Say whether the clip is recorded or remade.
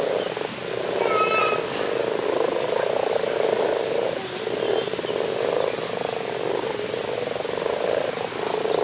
recorded